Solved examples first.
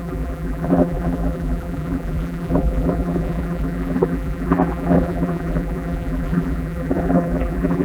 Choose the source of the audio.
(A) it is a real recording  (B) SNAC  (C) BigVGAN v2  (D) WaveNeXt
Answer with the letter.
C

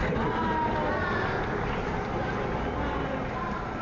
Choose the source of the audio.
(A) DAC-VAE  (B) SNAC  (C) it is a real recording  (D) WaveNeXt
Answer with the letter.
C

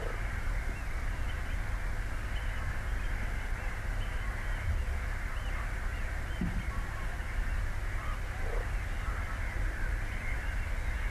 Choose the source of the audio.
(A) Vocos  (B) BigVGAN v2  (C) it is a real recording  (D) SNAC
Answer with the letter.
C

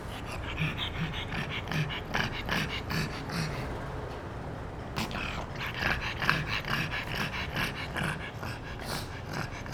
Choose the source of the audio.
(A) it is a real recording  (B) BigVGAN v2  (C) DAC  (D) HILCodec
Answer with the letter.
A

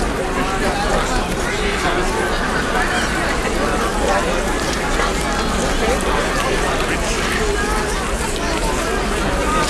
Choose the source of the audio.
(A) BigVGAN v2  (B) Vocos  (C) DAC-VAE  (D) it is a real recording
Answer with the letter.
D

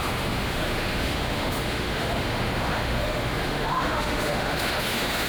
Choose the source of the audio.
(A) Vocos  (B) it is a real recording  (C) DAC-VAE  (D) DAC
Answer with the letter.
C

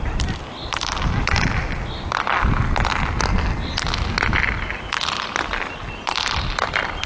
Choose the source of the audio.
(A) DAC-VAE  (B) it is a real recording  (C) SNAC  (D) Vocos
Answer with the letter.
B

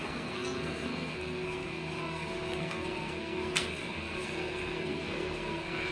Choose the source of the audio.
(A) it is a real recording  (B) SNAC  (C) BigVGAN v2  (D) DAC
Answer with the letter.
B